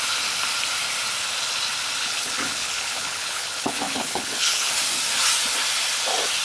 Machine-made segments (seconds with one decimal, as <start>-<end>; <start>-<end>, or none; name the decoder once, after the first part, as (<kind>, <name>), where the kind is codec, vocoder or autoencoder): 2.0-4.7 (codec, HILCodec)